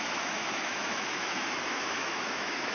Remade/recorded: remade